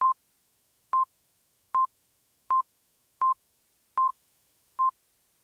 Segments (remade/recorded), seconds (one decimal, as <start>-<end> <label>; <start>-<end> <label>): 0.0-0.4 recorded; 0.4-3.6 remade; 3.6-4.1 recorded; 4.1-4.8 remade; 4.8-5.4 recorded